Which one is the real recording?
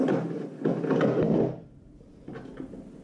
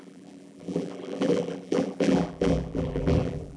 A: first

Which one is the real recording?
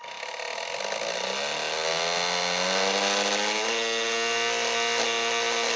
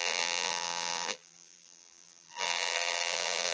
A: first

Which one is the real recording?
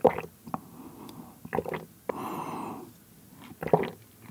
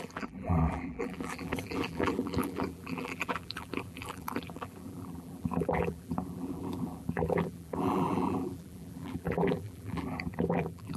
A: first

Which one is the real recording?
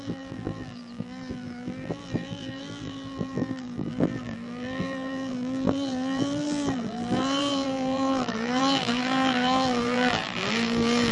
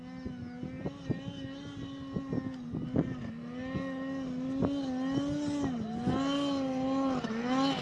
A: second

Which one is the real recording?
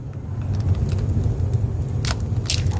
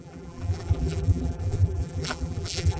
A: first